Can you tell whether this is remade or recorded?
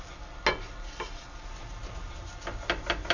recorded